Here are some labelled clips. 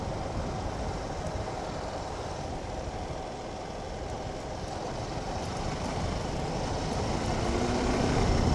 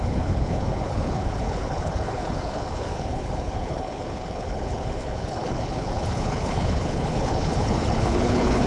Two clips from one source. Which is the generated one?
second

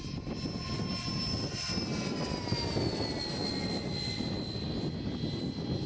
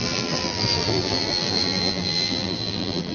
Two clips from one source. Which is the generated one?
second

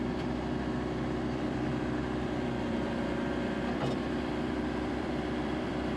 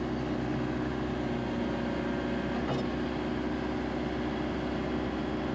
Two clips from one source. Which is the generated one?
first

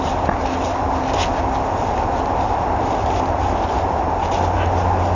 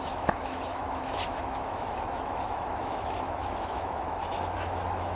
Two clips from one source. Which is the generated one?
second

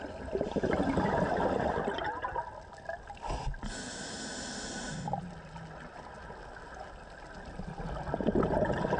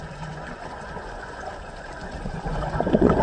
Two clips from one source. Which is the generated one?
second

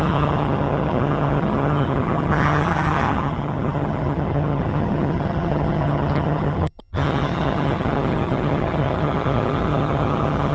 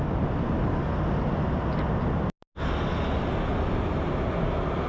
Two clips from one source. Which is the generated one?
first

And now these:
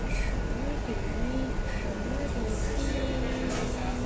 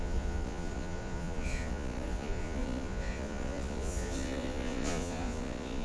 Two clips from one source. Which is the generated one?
second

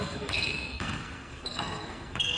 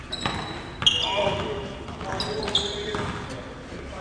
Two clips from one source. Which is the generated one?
first